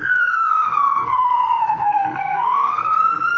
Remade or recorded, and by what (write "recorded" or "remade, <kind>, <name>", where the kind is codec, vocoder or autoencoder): remade, codec, SNAC